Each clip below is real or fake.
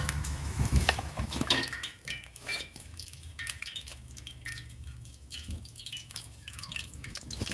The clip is fake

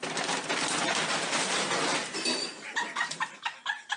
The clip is fake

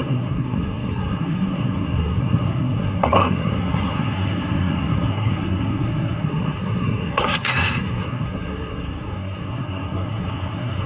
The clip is fake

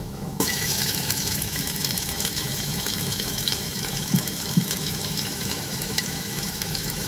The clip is fake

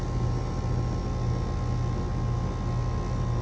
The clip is real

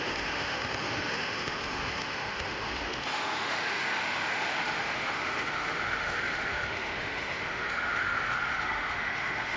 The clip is fake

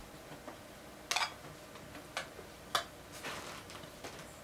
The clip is real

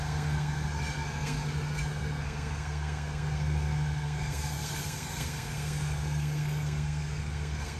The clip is fake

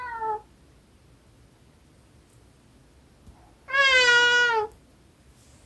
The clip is real